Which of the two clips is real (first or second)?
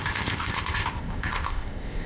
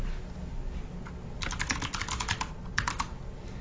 second